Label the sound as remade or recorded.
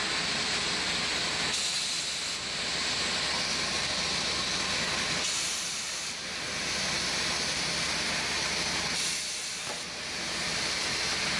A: recorded